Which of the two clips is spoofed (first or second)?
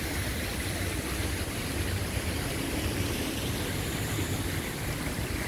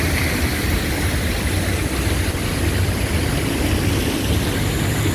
first